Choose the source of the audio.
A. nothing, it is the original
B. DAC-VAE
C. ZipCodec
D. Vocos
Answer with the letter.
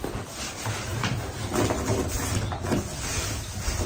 A